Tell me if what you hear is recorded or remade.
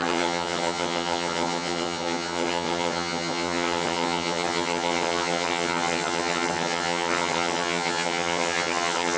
remade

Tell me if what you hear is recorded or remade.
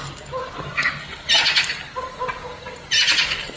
recorded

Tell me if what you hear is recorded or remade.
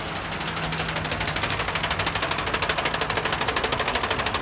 recorded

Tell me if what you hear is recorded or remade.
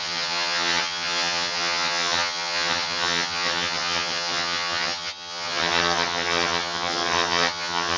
remade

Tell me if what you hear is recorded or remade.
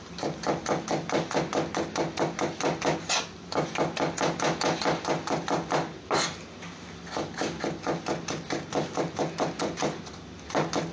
recorded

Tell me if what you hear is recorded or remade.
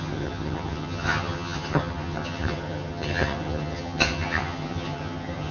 remade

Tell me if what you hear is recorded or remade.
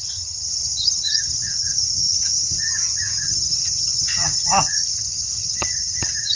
remade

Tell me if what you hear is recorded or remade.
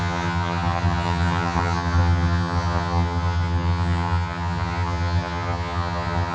remade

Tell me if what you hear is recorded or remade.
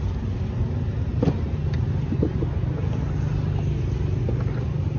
recorded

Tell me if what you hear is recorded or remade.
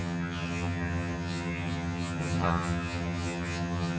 remade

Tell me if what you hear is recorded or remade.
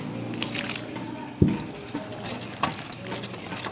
recorded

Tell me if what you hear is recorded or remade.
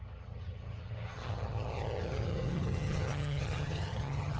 remade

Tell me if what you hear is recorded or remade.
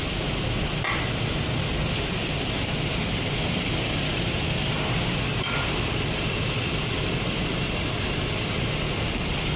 recorded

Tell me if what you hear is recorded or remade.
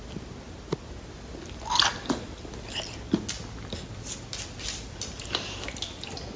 recorded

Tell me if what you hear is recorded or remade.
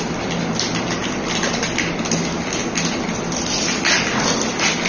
recorded